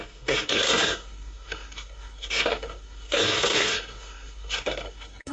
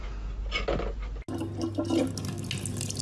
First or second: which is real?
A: second